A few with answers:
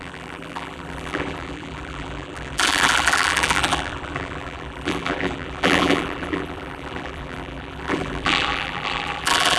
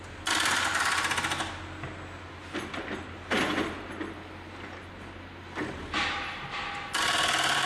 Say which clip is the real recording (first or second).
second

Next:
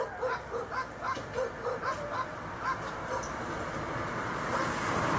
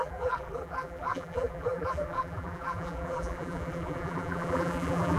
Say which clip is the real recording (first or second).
first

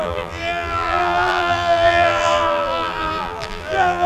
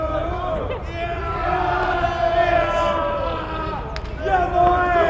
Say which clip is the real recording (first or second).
second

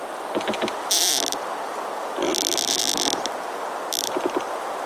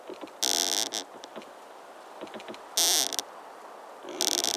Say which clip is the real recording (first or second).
second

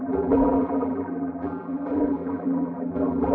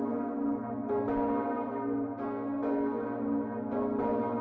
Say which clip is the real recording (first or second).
second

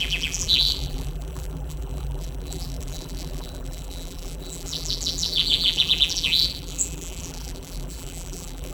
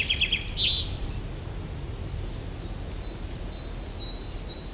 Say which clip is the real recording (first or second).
second